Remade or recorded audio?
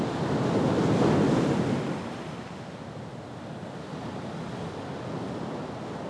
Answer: recorded